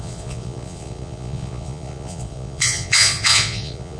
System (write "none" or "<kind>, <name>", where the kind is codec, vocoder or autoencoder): vocoder, Vocos